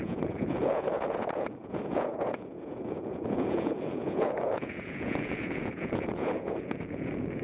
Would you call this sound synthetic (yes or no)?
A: yes